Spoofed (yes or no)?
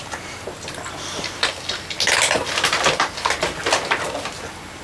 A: no